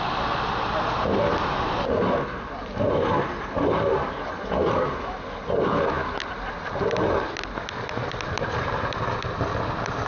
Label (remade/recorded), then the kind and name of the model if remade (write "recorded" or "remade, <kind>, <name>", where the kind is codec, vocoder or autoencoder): recorded